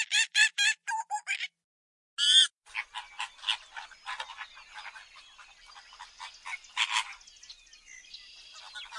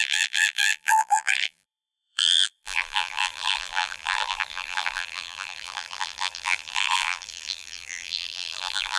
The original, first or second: first